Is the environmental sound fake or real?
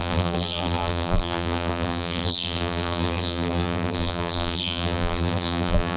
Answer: fake